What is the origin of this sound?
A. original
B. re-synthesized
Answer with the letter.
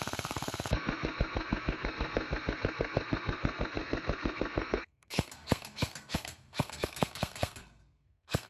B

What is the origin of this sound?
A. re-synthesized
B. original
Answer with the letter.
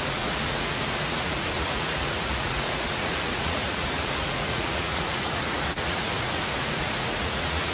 A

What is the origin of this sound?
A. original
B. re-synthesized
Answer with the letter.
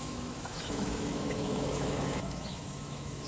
B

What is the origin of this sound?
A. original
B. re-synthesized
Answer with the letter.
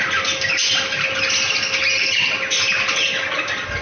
A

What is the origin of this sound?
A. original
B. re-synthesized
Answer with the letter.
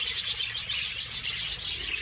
A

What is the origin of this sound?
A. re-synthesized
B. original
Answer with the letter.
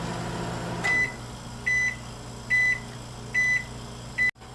B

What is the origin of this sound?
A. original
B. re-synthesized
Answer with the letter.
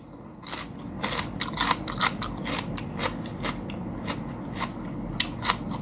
A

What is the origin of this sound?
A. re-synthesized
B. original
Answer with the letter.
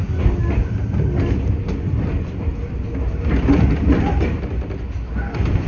B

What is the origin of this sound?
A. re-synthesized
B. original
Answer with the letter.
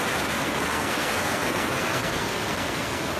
A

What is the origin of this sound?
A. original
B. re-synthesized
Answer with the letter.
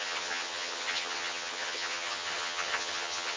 B